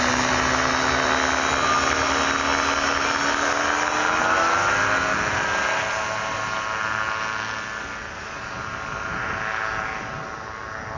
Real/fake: real